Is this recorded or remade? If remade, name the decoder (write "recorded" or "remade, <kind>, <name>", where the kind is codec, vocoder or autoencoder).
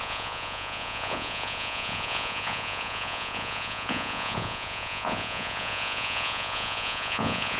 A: remade, vocoder, Vocos